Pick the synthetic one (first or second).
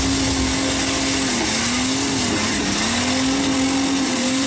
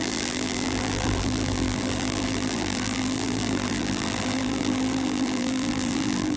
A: second